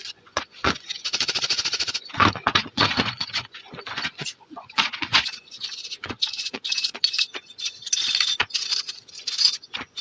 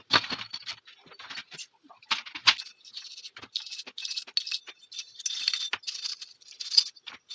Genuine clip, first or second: second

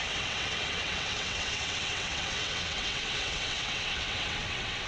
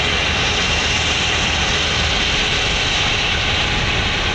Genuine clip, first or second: second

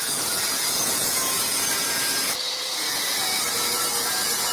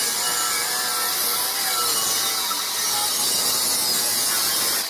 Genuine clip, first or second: second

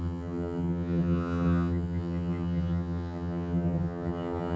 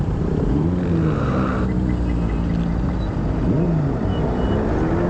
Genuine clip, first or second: second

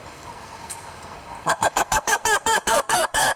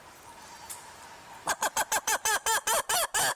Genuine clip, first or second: second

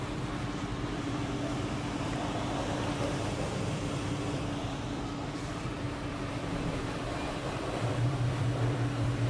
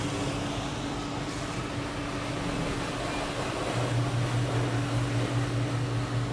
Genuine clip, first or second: second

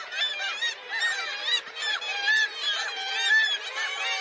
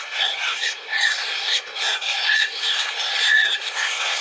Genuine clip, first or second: first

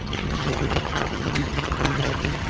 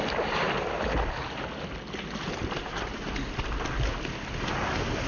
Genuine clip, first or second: second